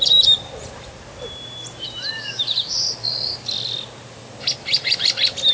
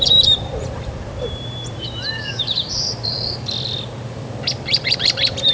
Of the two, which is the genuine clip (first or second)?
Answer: first